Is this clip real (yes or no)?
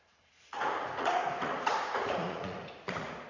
no